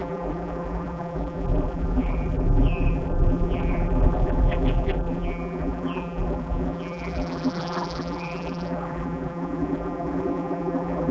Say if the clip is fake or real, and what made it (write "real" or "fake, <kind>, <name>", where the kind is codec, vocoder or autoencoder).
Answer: fake, vocoder, BigVGAN v2